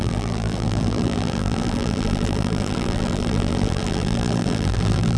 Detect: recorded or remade remade